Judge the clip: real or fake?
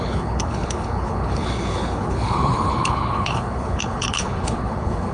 fake